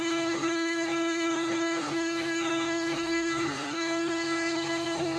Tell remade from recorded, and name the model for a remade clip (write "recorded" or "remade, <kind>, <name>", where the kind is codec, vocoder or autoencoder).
remade, codec, SNAC